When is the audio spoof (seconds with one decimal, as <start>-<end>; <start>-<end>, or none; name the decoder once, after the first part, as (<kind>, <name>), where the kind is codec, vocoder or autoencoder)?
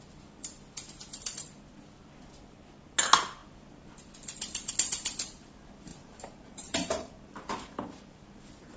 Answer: 5.9-8.4 (vocoder, BigVGAN v2)